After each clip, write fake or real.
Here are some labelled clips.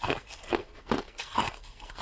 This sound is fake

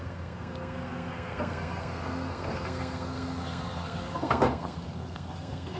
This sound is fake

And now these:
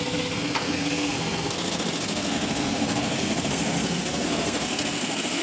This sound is fake